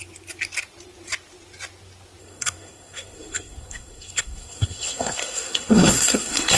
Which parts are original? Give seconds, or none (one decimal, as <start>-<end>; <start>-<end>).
0.0-2.2